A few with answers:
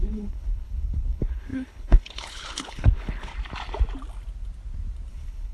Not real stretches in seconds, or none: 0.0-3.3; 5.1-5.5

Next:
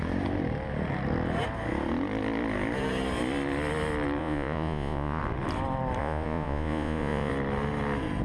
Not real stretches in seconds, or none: 4.2-5.2; 6.0-7.3

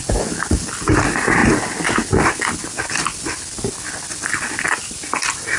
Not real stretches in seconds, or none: none

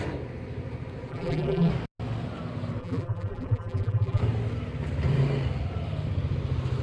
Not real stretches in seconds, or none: 1.1-1.7; 2.8-4.2

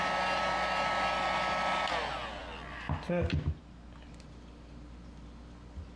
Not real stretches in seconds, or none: none

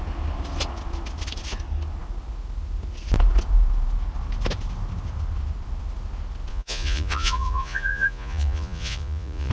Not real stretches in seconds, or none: 6.5-9.5

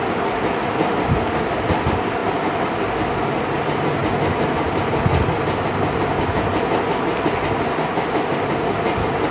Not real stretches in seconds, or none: none